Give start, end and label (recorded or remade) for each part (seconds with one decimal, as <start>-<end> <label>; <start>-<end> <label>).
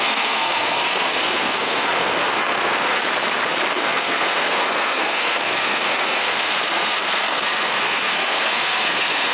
0.0-3.0 remade; 3.0-3.7 recorded; 3.7-9.3 remade